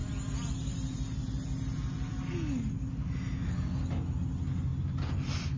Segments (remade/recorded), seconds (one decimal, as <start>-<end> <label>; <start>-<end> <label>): 0.0-5.6 recorded